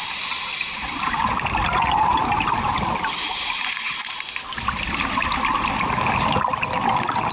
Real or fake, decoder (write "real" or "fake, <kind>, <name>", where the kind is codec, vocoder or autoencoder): real